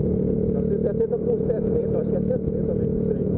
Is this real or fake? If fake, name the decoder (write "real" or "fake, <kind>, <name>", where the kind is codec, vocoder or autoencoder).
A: real